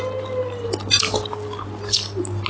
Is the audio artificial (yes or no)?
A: no